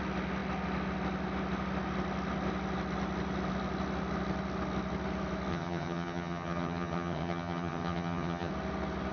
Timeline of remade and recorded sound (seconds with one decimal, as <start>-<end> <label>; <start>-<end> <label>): 0.0-5.5 recorded; 5.5-8.5 remade; 8.5-9.1 recorded